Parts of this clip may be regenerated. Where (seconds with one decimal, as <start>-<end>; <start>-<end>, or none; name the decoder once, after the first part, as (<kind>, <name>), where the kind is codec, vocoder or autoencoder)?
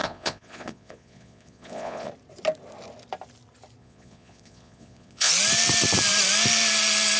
0.0-2.1 (vocoder, Vocos); 3.8-5.3